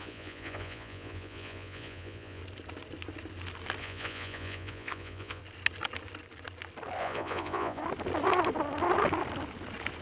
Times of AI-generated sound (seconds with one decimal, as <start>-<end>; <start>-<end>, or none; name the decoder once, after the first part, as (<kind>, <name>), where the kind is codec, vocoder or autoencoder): 0.0-2.4 (vocoder, Vocos); 3.8-5.4; 7.0-7.8